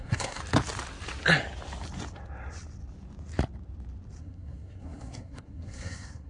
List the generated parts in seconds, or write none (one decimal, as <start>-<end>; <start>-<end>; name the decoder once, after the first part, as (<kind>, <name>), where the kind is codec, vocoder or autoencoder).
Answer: 0.0-0.4 (codec, SNAC); 4.2-6.3